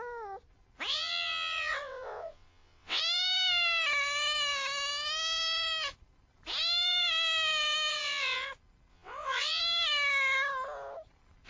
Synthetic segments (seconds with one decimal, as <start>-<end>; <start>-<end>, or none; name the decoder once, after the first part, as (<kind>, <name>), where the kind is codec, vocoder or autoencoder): 0.9-3.0 (vocoder, WaveNeXt); 7.9-8.5; 8.9-9.6